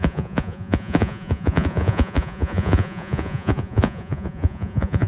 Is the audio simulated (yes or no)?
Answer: yes